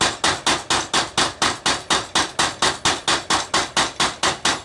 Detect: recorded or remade recorded